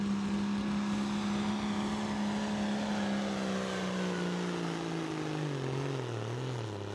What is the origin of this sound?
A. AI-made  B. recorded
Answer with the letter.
B